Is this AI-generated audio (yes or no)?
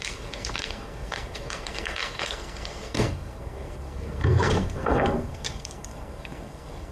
yes